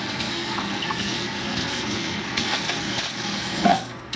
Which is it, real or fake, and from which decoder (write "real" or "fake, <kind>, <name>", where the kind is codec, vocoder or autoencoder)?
fake, codec, SNAC